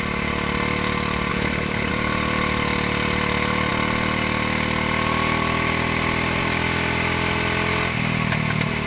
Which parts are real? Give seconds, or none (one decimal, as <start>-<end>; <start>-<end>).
0.0-1.3; 1.9-8.9